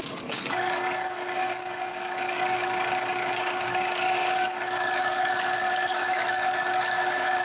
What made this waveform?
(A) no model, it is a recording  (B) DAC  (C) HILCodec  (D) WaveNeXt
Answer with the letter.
B